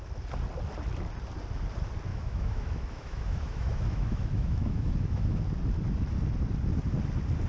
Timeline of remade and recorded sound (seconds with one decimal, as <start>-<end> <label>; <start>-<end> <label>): 0.0-2.1 recorded; 2.1-5.4 remade; 5.4-7.5 recorded